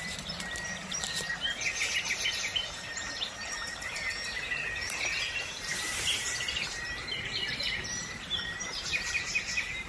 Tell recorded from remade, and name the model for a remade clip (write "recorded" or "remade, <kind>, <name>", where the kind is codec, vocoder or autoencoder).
remade, vocoder, BigVGAN v2